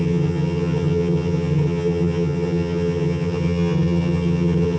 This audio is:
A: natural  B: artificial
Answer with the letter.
B